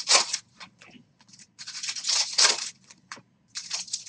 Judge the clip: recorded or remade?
remade